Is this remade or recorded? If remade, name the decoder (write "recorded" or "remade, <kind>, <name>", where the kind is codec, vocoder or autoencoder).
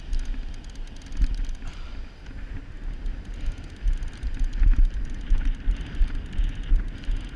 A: recorded